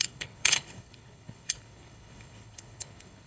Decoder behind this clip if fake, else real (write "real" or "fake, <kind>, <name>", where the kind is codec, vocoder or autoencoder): fake, codec, HILCodec